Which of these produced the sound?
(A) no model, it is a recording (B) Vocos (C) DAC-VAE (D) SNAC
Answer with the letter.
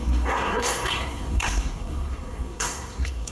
D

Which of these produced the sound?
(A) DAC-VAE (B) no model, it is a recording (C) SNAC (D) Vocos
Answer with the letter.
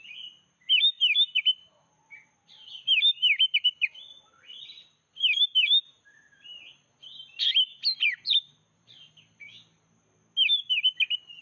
B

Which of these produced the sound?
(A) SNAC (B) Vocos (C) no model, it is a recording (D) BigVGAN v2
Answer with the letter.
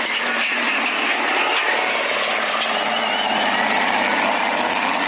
C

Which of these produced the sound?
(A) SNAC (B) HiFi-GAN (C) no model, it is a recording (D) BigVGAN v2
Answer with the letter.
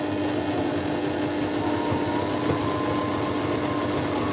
C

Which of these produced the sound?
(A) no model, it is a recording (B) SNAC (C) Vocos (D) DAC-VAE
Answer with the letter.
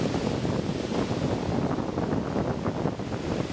A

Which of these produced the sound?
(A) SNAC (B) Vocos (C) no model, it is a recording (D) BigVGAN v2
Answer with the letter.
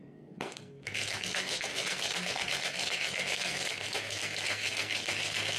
A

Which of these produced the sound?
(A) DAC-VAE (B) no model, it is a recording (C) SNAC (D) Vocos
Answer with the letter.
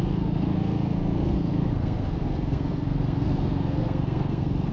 C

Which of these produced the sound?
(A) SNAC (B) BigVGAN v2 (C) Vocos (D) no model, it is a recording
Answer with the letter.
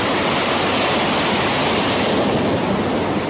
D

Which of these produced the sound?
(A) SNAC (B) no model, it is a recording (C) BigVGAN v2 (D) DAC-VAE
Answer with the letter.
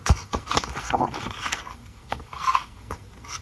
A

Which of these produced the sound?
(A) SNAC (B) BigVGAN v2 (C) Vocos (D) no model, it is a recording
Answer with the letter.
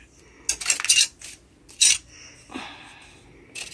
D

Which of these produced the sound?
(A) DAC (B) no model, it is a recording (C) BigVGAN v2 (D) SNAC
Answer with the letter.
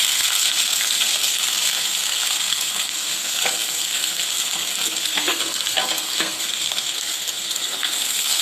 D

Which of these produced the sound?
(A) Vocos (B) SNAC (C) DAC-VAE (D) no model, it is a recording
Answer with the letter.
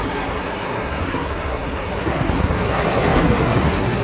B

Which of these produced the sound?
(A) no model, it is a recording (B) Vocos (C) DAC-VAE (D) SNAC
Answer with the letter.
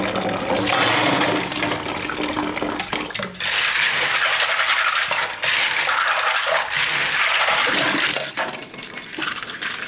A